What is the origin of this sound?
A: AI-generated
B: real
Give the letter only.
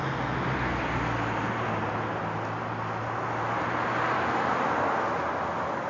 B